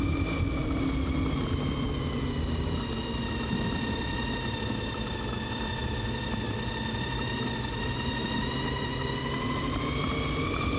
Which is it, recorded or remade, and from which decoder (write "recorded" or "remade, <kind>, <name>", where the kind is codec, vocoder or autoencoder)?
recorded